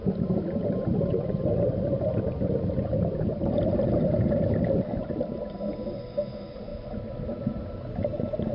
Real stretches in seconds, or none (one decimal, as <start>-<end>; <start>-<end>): 5.1-8.5